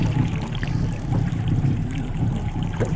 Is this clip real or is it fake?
fake